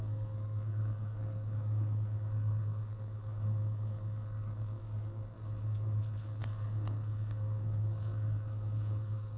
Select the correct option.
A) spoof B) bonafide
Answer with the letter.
A